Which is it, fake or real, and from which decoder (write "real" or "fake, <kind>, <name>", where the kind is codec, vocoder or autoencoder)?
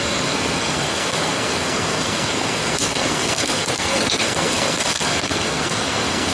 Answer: fake, codec, SNAC